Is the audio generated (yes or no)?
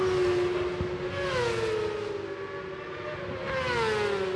no